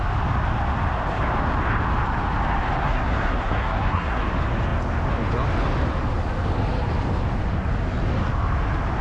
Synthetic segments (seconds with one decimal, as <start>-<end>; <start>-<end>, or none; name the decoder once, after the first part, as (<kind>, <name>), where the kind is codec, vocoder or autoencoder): 2.8-4.2 (codec, SNAC)